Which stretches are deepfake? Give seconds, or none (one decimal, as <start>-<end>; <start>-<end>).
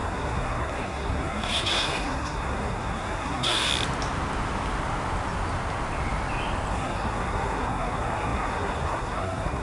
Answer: 0.0-3.7; 6.7-9.6